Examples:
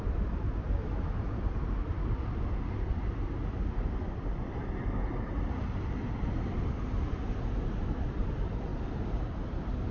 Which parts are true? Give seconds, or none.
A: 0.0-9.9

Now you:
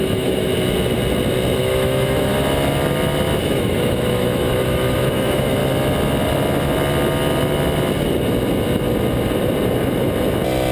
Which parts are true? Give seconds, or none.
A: 0.5-1.6; 2.3-3.4; 5.6-10.7

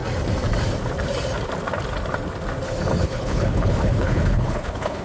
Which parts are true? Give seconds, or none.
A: 0.0-3.0

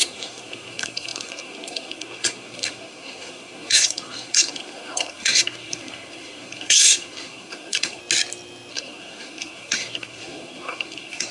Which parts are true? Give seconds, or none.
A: 8.0-8.7

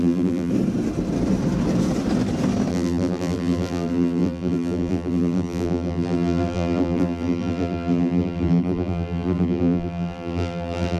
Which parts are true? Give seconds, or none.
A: 0.5-2.7

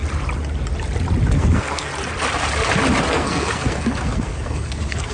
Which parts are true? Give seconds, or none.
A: 0.0-1.3; 1.9-3.1

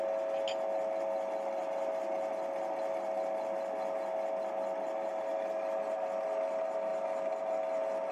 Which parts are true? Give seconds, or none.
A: 0.0-8.1